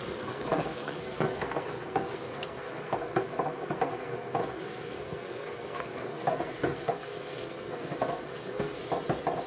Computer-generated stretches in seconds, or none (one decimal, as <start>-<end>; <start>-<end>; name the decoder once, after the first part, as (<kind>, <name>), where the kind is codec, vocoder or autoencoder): 0.0-8.8 (codec, SNAC)